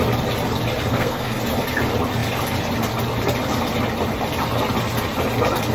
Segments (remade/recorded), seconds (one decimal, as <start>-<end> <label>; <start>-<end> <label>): 0.0-0.9 recorded; 0.9-1.4 remade; 1.4-5.7 recorded